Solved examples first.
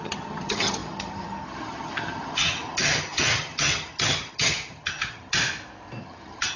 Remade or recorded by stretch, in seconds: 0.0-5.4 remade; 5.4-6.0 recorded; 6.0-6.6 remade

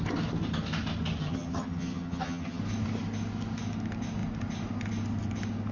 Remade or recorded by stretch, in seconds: 0.0-1.2 recorded; 1.2-2.6 remade; 2.6-5.7 recorded

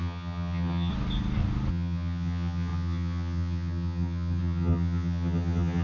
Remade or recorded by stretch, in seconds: 0.0-0.9 remade; 0.9-1.7 recorded; 1.7-5.8 remade

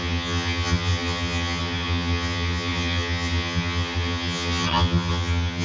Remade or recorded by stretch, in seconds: 0.0-5.6 remade

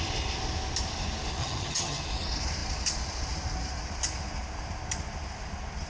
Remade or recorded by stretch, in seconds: 0.0-1.4 recorded; 1.4-2.0 remade; 2.0-5.9 recorded

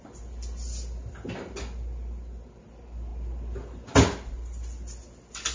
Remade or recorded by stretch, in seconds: 0.0-5.5 recorded

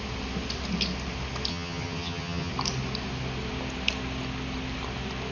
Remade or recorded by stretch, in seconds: 0.0-1.5 recorded; 1.5-2.5 remade; 2.5-5.3 recorded

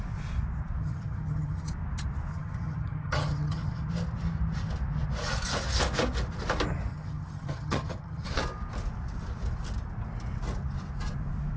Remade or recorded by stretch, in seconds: 0.0-0.8 recorded; 0.8-1.7 remade; 1.7-2.3 recorded; 2.3-3.9 remade; 3.9-6.9 recorded; 6.9-8.4 remade; 8.4-11.6 recorded